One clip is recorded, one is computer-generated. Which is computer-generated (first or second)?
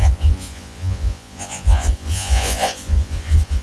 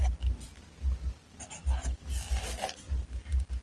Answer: first